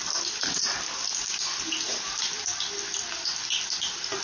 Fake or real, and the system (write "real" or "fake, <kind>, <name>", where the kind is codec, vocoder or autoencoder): real